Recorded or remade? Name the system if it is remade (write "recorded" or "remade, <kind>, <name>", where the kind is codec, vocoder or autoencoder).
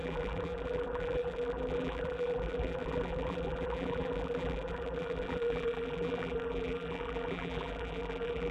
remade, vocoder, BigVGAN v2